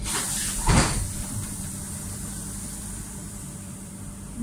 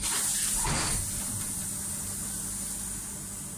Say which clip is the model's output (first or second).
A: first